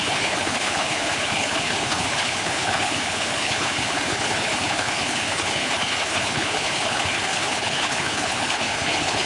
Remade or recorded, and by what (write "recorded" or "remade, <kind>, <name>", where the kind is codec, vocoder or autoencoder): remade, codec, HILCodec